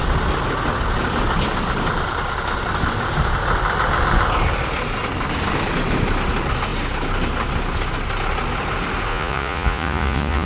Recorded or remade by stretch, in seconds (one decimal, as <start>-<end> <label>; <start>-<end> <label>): 0.0-9.1 recorded; 9.1-10.5 remade